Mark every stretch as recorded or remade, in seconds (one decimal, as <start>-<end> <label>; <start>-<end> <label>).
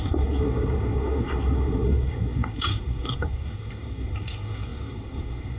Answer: 0.0-5.6 remade